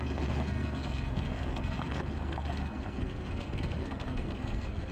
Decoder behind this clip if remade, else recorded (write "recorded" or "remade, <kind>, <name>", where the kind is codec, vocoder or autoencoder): remade, codec, SNAC